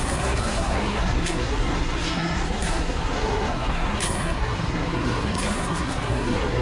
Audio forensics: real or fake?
fake